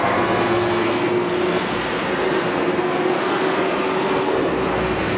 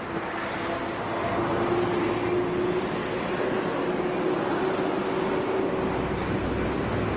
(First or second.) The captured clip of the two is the second